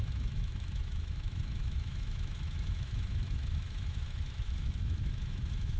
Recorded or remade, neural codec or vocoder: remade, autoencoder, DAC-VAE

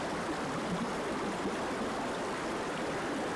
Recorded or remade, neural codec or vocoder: recorded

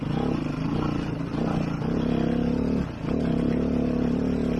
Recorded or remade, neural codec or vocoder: recorded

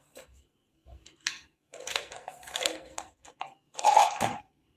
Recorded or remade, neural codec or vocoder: remade, codec, SNAC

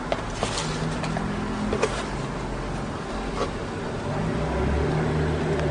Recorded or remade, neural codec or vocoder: recorded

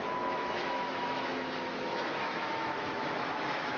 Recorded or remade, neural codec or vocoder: remade, autoencoder, DAC-VAE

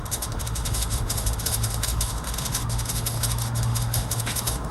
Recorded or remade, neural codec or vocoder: remade, autoencoder, DAC-VAE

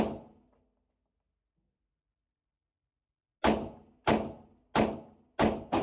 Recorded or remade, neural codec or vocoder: recorded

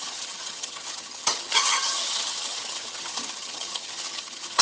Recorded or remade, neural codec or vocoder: remade, vocoder, HiFi-GAN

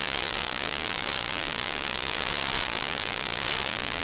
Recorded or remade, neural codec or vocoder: remade, vocoder, Vocos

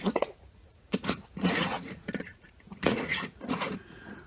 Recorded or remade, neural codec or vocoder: remade, vocoder, Vocos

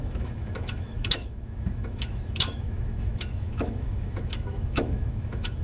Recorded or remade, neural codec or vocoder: remade, autoencoder, DAC-VAE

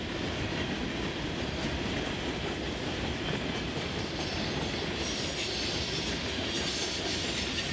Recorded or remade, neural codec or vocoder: recorded